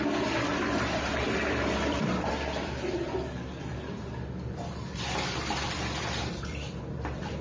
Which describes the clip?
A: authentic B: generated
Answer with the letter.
B